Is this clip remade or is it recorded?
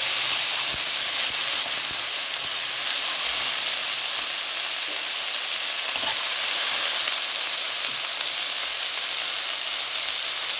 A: recorded